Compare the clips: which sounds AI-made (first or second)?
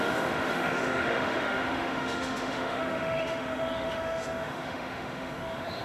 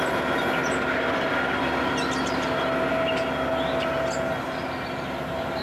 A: first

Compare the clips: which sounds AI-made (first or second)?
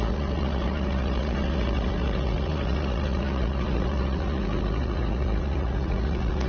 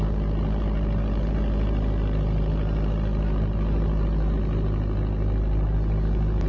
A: first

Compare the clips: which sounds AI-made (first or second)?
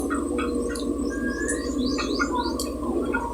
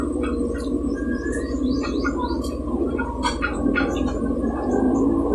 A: second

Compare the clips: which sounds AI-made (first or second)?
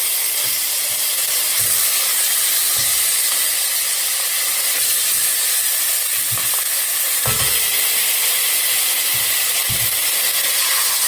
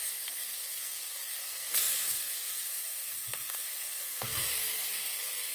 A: second